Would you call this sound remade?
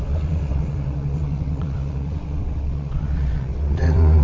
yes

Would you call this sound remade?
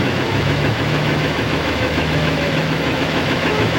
yes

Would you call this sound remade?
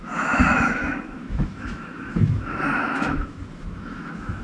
yes